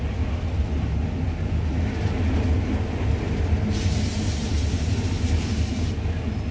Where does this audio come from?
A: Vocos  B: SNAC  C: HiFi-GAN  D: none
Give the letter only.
D